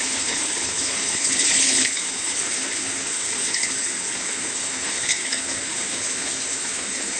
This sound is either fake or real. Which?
fake